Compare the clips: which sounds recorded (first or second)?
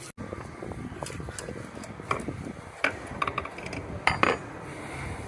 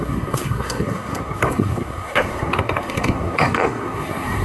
first